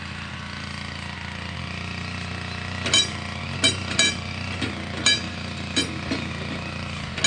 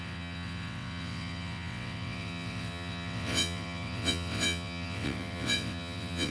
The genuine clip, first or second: first